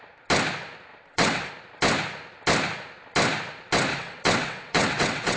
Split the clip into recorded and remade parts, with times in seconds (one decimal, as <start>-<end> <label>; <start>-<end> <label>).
0.0-0.9 recorded; 0.9-1.5 remade; 1.5-3.9 recorded; 3.9-5.4 remade